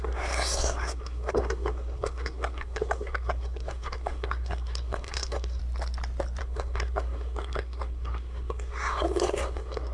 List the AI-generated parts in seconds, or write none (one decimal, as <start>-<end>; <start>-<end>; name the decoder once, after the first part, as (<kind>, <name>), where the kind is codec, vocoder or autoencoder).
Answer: 0.0-5.6 (codec, SNAC); 6.4-9.9